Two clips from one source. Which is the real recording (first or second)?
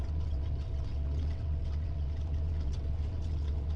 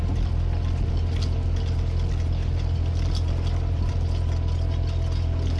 second